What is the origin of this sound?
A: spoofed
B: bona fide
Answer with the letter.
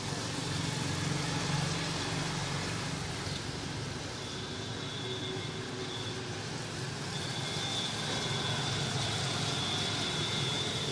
B